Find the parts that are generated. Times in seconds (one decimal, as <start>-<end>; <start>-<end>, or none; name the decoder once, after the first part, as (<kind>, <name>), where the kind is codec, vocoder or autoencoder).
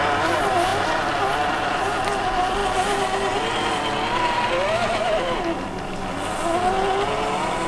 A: none